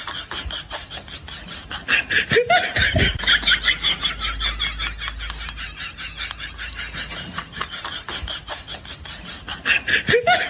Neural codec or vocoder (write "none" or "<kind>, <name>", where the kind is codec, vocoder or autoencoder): none